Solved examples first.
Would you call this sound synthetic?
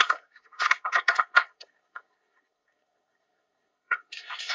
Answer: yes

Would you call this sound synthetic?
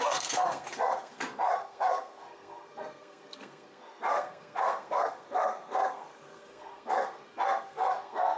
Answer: yes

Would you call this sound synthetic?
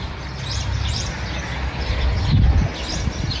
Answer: no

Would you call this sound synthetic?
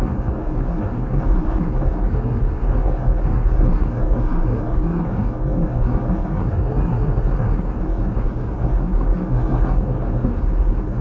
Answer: yes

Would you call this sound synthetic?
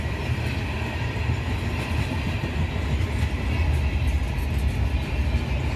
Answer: no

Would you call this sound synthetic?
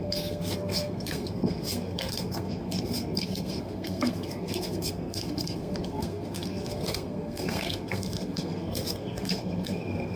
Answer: yes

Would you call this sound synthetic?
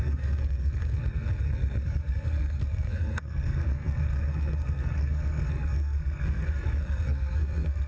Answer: yes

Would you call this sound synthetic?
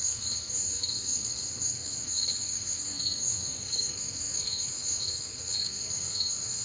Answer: yes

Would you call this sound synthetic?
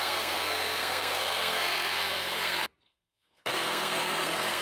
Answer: yes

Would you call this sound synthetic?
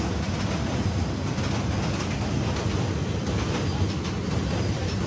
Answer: no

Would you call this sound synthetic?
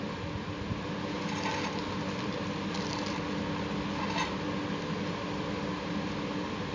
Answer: no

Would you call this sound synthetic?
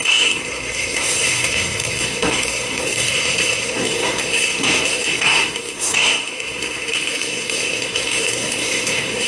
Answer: yes